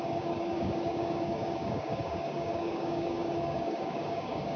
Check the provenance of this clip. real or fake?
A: fake